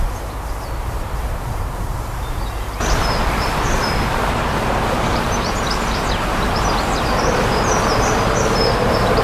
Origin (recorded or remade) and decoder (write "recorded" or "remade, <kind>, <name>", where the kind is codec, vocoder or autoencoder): remade, vocoder, BigVGAN v2